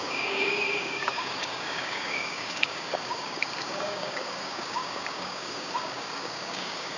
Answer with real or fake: fake